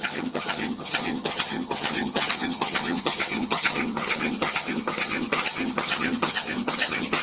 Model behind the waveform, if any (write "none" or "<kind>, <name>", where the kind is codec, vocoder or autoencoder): vocoder, HiFi-GAN